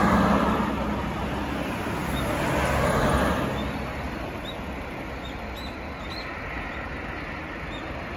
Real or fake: real